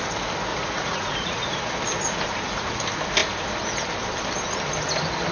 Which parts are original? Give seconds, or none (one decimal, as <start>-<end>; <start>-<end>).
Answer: 0.0-0.5; 1.7-5.3